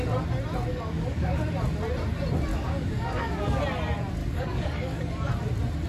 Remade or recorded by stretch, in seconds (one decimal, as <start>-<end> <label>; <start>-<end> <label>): 0.0-0.7 recorded; 0.7-1.4 remade; 1.4-2.5 recorded; 2.5-3.6 remade; 3.6-4.2 recorded; 4.2-5.3 remade; 5.3-5.9 recorded